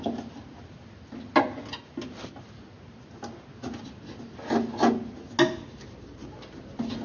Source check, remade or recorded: recorded